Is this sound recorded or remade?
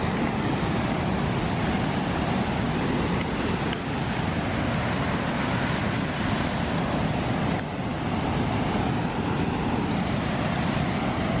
recorded